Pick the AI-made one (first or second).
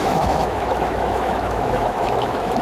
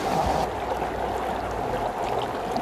first